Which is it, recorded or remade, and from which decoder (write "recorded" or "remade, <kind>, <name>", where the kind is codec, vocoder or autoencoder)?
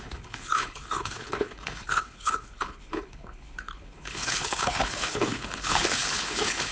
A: remade, codec, HILCodec